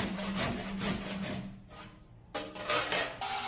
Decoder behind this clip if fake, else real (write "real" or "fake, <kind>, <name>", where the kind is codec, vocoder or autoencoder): real